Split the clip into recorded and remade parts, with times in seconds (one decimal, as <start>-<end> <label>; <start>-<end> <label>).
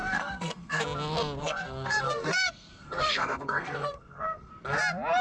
0.0-0.8 remade; 0.8-1.4 recorded; 1.4-4.5 remade; 4.5-5.2 recorded